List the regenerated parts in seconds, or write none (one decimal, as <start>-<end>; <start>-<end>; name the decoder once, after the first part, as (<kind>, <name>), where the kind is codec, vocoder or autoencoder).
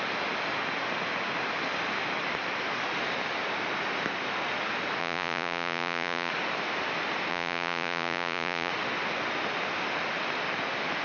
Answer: 5.0-6.3 (vocoder, Vocos); 7.3-8.7